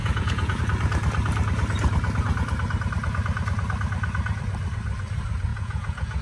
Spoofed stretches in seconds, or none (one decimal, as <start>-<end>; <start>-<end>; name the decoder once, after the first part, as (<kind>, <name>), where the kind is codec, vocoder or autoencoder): 0.0-0.6 (vocoder, Vocos); 5.5-6.2